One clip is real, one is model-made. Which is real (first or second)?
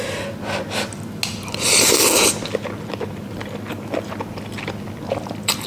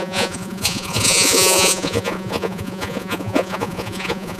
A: first